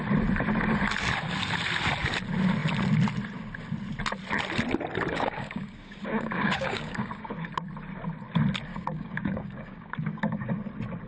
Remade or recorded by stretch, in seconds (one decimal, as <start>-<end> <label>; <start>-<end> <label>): 0.0-5.1 recorded; 5.1-7.5 remade; 7.5-8.7 recorded; 8.7-10.5 remade; 10.5-11.1 recorded